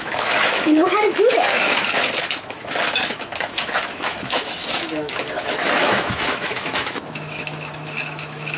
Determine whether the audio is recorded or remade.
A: remade